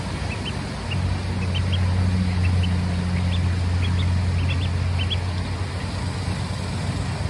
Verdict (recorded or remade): recorded